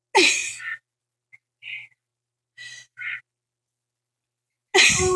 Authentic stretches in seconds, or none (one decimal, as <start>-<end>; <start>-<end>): 0.0-2.1; 3.2-5.2